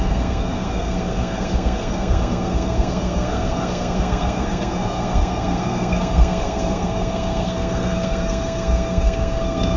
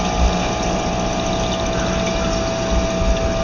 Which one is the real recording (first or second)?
second